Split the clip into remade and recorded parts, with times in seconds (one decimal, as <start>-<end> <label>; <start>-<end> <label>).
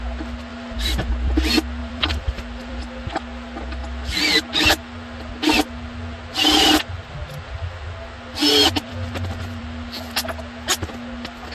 0.0-0.5 recorded; 0.5-1.1 remade; 1.1-1.8 recorded; 1.8-2.8 remade; 2.8-8.4 recorded; 8.4-10.2 remade; 10.2-11.5 recorded